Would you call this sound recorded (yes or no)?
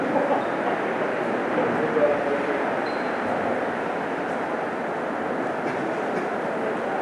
yes